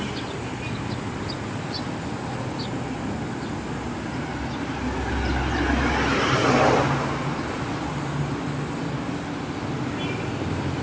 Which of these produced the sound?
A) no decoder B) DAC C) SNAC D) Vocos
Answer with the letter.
A